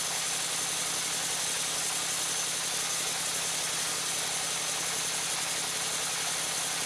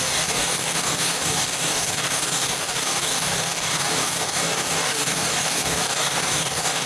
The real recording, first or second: first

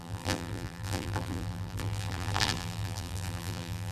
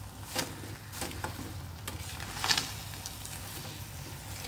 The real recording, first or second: second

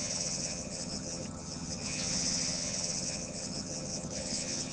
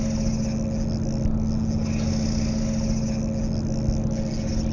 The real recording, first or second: second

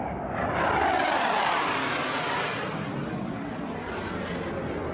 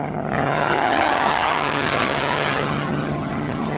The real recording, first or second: first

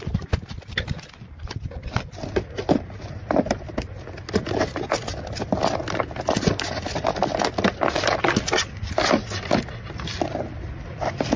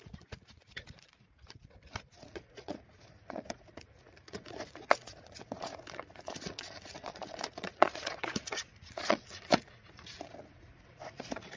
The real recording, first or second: first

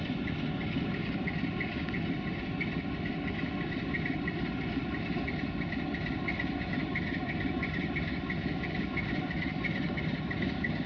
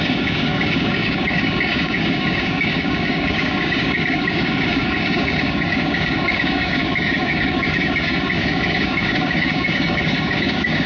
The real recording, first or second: first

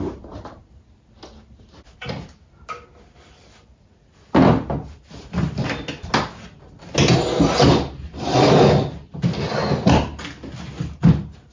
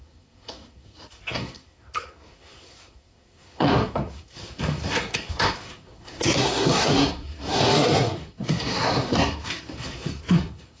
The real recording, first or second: first